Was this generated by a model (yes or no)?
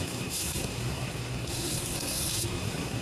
yes